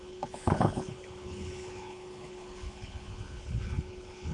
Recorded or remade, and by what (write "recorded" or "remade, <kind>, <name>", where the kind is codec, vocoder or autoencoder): remade, codec, HILCodec